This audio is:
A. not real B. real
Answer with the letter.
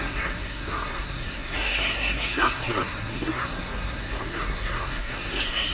A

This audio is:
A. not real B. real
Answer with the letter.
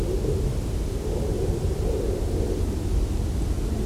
B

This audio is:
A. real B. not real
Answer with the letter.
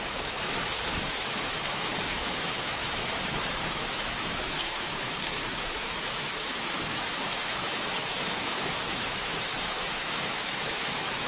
B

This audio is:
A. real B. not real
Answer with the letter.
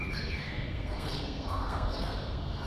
B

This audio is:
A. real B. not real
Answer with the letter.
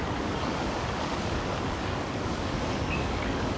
B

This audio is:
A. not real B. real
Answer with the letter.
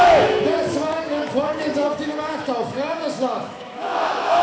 A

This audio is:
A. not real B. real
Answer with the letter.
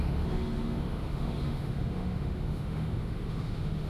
A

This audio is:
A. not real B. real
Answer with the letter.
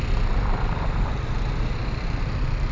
B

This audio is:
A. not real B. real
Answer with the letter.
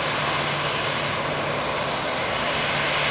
B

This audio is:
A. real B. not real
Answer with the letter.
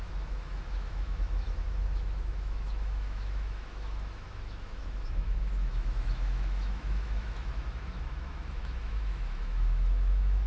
B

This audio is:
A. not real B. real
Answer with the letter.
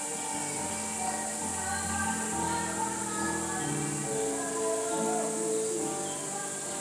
B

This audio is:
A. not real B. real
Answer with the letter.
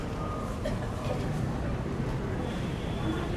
A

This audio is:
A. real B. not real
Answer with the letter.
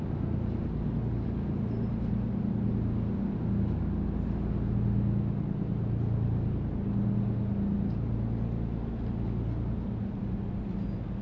A